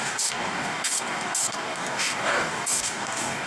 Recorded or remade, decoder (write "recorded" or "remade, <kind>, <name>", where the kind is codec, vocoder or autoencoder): remade, codec, DAC